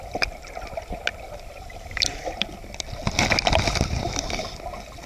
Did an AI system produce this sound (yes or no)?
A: no